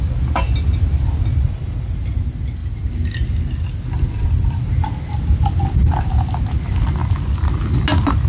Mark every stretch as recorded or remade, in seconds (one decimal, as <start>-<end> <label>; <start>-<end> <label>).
0.0-1.3 recorded; 1.3-2.0 remade; 2.0-8.3 recorded